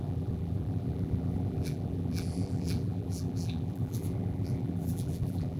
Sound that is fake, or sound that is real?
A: fake